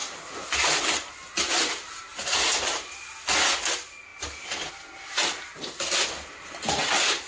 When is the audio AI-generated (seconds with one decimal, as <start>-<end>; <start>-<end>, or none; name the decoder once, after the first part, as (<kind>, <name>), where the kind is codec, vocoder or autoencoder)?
none